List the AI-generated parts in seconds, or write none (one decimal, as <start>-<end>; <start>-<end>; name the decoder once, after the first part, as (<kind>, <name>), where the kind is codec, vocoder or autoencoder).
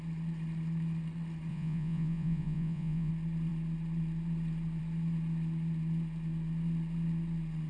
1.5-3.1 (vocoder, Vocos)